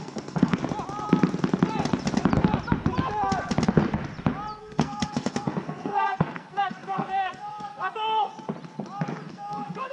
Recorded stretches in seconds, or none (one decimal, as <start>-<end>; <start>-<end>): 0.6-4.6; 8.3-9.3